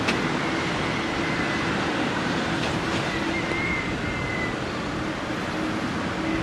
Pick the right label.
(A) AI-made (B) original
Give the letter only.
B